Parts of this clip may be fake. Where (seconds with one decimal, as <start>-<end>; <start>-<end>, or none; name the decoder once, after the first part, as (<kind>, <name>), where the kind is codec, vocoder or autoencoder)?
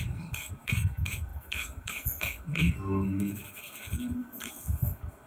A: 0.0-5.3 (codec, SNAC)